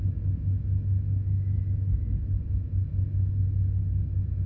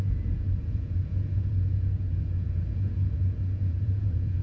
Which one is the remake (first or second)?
second